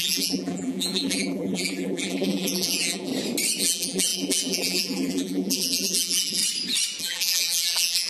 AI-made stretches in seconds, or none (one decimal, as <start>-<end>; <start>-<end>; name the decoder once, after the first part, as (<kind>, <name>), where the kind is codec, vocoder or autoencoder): 0.0-3.1 (vocoder, BigVGAN v2); 3.6-6.4; 7.0-8.1